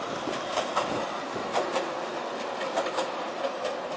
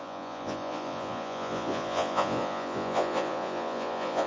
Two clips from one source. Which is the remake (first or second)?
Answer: second